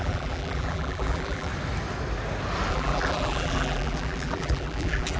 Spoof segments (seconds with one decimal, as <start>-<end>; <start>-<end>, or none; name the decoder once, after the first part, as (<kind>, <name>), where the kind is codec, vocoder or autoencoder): 0.0-1.5 (vocoder, BigVGAN v2); 2.7-5.2